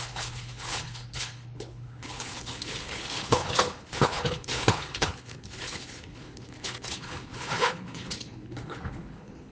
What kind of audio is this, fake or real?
fake